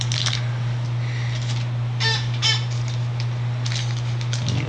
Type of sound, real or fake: real